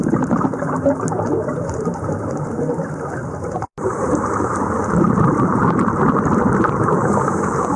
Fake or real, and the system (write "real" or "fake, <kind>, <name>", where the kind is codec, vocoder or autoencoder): fake, vocoder, BigVGAN v2